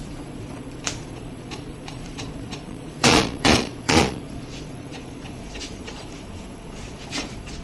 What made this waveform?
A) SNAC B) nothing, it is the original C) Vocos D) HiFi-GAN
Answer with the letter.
C